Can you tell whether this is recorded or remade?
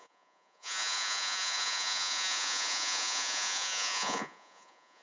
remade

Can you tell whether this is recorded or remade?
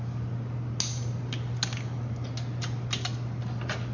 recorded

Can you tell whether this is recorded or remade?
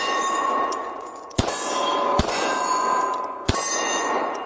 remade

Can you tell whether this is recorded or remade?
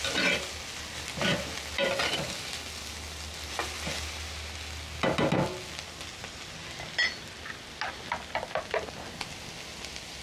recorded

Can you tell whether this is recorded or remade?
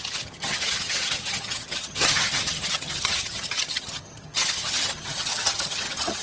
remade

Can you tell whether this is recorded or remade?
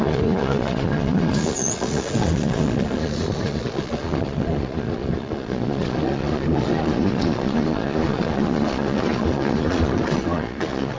remade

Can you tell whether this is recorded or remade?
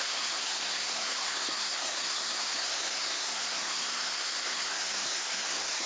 remade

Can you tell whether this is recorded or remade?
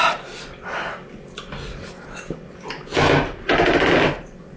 recorded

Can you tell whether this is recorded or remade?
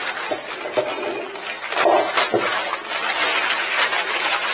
recorded